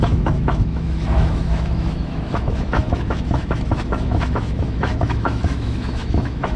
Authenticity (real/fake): fake